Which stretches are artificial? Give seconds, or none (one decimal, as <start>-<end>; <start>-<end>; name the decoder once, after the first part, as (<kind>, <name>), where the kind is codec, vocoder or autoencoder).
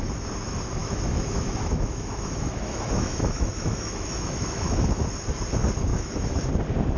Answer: 0.8-5.0 (autoencoder, DAC-VAE); 5.9-6.4